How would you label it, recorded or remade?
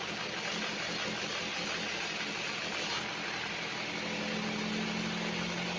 recorded